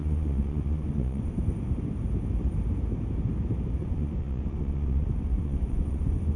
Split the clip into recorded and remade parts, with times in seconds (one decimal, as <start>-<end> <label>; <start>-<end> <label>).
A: 0.0-1.3 remade; 1.3-3.8 recorded; 3.8-6.4 remade